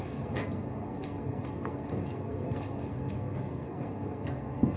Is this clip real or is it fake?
fake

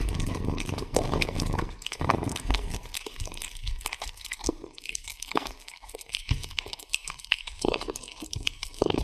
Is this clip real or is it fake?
fake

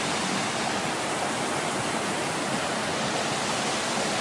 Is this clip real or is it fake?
real